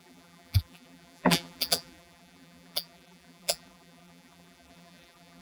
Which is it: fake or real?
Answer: fake